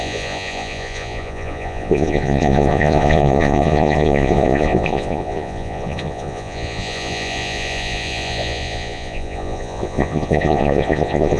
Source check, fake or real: fake